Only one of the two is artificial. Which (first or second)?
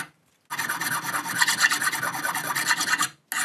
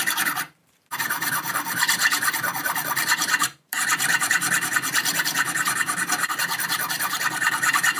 second